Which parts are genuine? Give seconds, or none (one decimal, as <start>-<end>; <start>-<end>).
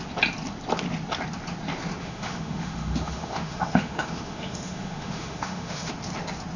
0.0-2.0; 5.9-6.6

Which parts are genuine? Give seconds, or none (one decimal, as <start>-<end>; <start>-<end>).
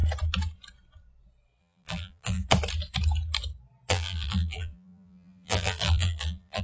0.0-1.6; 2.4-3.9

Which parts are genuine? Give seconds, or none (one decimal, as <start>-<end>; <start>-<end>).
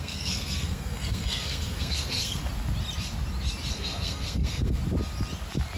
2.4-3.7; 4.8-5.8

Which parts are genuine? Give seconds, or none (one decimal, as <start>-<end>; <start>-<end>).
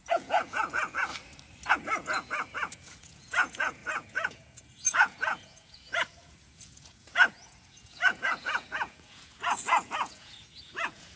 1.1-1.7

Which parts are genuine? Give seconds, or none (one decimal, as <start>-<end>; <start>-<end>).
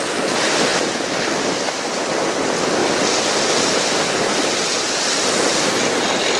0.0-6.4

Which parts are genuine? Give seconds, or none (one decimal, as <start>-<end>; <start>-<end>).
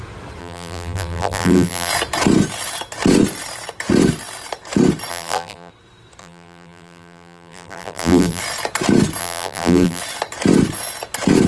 0.0-0.4; 1.9-5.1; 5.7-6.2; 8.4-9.2; 10.0-11.5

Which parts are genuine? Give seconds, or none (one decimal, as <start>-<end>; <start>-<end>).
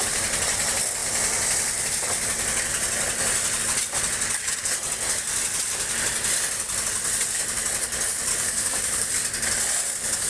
0.0-8.3; 9.1-10.3